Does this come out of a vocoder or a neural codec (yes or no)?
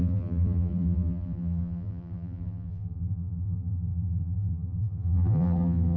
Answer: yes